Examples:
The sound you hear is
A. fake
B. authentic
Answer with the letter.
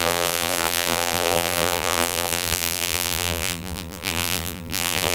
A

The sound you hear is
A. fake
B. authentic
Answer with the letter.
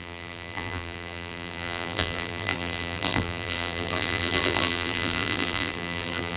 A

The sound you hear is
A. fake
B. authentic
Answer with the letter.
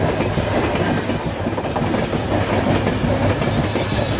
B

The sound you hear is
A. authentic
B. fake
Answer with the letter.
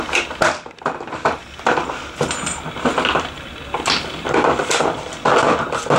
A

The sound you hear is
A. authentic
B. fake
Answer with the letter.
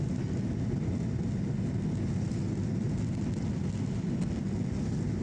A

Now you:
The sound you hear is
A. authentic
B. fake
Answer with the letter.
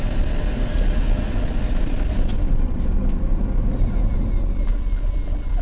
A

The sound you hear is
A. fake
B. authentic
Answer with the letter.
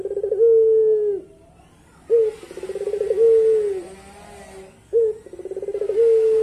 B